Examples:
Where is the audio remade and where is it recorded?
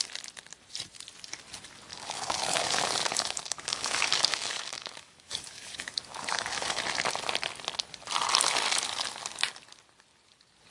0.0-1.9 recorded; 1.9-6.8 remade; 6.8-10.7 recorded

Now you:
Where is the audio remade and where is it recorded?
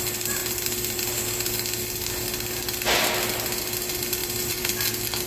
0.0-4.2 recorded; 4.2-4.8 remade; 4.8-5.3 recorded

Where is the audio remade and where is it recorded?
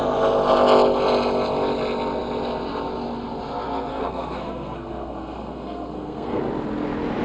0.0-3.9 recorded; 3.9-6.4 remade; 6.4-7.2 recorded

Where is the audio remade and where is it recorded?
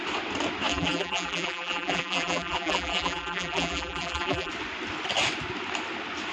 0.0-0.7 recorded; 0.7-4.5 remade; 4.5-6.3 recorded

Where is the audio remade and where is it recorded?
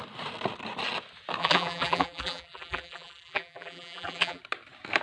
0.0-1.4 recorded; 1.4-4.4 remade; 4.4-5.0 recorded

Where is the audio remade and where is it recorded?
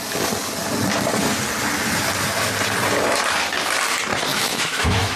0.0-4.3 recorded; 4.3-5.2 remade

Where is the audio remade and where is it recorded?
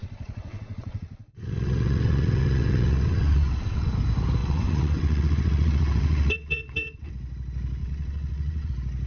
0.0-3.9 remade; 3.9-4.4 recorded; 4.4-7.1 remade; 7.1-7.8 recorded; 7.8-8.7 remade; 8.7-9.1 recorded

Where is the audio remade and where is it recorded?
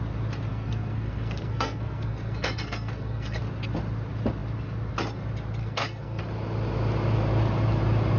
0.0-0.5 recorded; 0.5-3.4 remade; 3.4-5.6 recorded; 5.6-6.2 remade; 6.2-8.2 recorded